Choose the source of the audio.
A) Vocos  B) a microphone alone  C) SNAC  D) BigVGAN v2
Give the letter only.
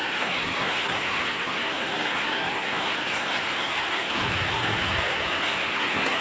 C